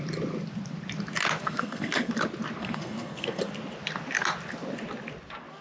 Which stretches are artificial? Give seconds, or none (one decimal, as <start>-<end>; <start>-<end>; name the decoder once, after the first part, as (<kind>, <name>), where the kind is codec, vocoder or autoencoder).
1.4-2.1 (codec, SNAC); 2.6-3.4